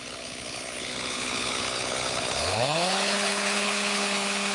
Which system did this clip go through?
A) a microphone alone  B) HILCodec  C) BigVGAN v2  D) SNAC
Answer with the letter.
B